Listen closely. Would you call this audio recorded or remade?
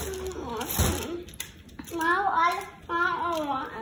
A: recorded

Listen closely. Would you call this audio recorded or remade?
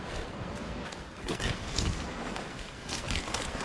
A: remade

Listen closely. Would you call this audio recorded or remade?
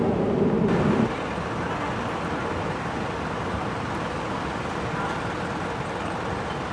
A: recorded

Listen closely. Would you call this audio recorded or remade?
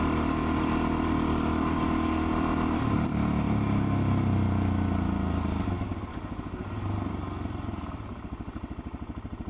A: recorded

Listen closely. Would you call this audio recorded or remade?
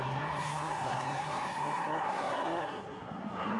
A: remade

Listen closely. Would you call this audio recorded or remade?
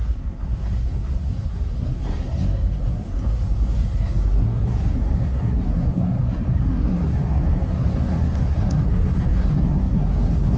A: remade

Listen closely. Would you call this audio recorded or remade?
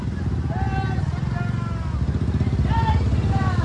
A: recorded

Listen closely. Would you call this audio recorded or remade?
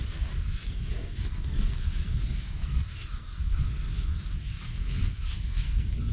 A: remade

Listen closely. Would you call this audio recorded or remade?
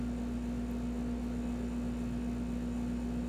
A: recorded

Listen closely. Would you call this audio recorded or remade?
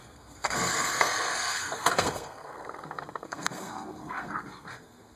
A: remade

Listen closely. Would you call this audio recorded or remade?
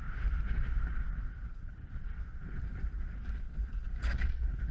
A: recorded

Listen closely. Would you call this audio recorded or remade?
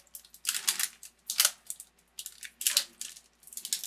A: recorded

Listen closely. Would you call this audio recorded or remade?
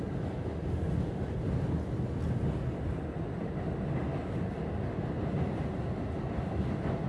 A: recorded